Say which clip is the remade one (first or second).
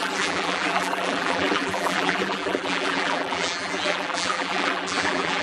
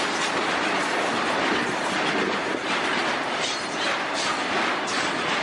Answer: first